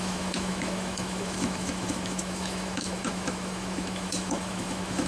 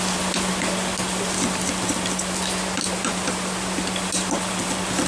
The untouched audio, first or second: second